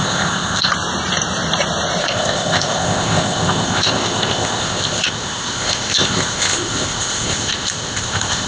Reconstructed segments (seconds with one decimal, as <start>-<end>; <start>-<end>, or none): 0.0-0.7; 2.0-8.5